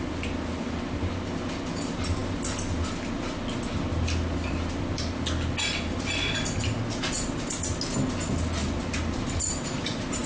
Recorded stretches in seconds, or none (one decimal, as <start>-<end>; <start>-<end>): 0.0-8.6